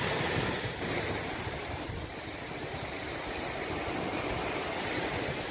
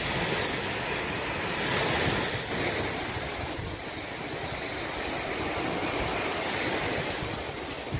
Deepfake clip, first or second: first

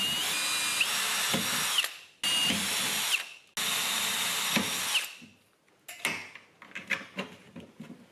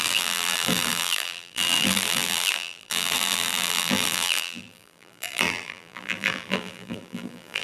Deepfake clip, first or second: second